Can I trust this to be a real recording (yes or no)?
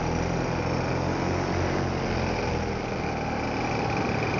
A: yes